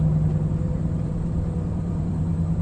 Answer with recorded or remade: remade